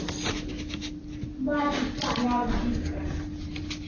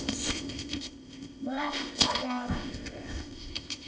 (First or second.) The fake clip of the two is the second